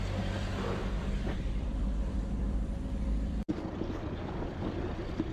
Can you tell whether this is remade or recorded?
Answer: remade